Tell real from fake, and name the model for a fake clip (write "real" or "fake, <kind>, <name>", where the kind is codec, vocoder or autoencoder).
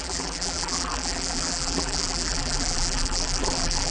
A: fake, vocoder, BigVGAN v2